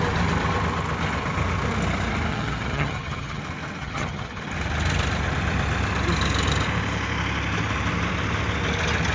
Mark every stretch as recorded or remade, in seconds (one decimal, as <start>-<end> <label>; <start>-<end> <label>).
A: 0.0-2.3 recorded; 2.3-3.4 remade; 3.4-3.8 recorded; 3.8-4.4 remade; 4.4-9.1 recorded